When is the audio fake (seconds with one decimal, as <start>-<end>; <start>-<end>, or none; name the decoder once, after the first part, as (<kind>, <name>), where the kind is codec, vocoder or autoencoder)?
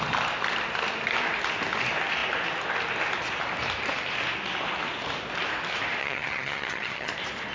6.0-7.1 (vocoder, HiFi-GAN)